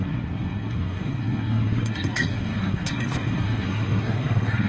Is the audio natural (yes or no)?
no